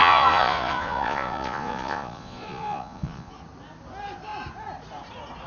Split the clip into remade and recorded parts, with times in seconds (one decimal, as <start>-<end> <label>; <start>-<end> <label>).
0.0-3.3 remade; 3.3-5.5 recorded